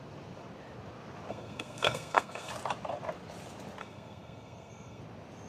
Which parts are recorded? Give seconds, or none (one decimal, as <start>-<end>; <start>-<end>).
0.0-1.3; 2.5-3.8; 5.0-5.5